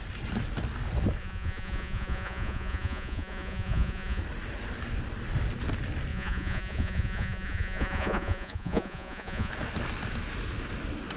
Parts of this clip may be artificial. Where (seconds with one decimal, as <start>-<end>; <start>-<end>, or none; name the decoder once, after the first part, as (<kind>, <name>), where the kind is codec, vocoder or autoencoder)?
1.2-4.2 (vocoder, Vocos); 6.1-9.5

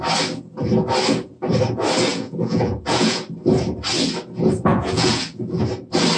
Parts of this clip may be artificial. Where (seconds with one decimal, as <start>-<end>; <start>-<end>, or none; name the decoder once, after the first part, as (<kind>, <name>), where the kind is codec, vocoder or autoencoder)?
2.1-3.2 (vocoder, Vocos); 4.7-5.6